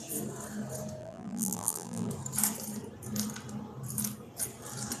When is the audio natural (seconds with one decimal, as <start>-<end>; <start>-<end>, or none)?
0.0-1.0; 2.1-5.0